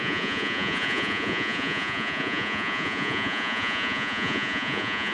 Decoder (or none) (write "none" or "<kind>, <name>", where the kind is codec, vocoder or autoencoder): vocoder, Vocos